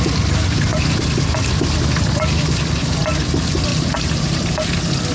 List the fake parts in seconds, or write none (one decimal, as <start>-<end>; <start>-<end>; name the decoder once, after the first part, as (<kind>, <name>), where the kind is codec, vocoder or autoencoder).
0.7-1.5 (vocoder, BigVGAN v2); 3.7-4.4